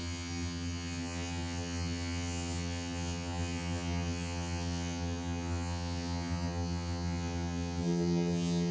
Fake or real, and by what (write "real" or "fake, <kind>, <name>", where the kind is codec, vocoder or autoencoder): fake, vocoder, HiFi-GAN